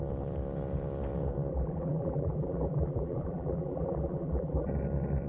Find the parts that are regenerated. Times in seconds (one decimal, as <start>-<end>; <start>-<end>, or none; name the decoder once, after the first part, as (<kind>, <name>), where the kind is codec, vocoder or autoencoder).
1.5-4.7 (vocoder, BigVGAN v2)